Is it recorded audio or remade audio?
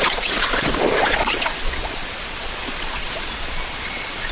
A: remade